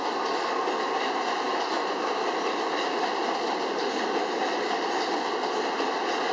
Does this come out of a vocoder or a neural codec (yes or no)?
no